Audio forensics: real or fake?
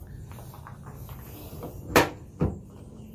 real